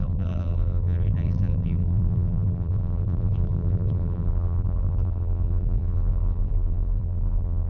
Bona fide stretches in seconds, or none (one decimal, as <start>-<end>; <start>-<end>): none